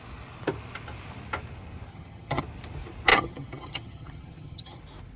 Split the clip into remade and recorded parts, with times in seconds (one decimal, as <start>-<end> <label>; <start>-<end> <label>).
0.0-1.9 recorded; 1.9-2.4 remade; 2.4-3.1 recorded; 3.1-4.8 remade; 4.8-5.2 recorded